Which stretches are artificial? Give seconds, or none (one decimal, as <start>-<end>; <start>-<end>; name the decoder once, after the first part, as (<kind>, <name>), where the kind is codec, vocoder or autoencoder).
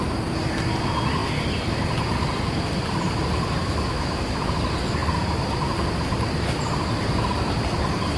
3.6-4.4 (autoencoder, DAC-VAE)